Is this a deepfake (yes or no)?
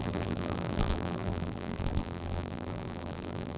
yes